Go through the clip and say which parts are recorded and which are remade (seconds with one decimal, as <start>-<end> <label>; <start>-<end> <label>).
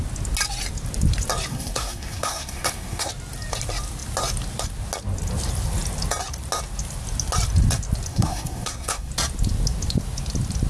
0.0-1.5 recorded; 1.5-3.1 remade; 3.1-8.1 recorded; 8.1-9.1 remade; 9.1-10.7 recorded